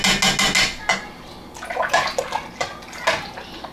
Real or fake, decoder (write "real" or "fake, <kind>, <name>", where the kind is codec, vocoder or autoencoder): real